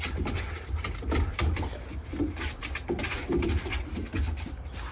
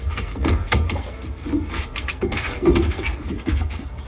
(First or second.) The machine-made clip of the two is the second